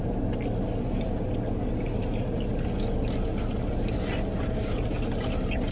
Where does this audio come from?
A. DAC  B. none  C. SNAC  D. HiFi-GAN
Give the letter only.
B